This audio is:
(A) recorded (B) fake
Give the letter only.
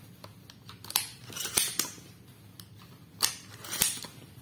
A